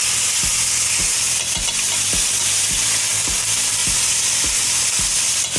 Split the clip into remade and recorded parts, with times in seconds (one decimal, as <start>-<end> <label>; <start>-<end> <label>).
0.0-5.6 recorded